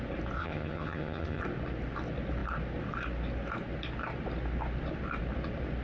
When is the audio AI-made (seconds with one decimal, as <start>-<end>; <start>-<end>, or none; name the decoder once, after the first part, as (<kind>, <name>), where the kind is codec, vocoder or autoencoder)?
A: 0.4-1.4 (vocoder, HiFi-GAN)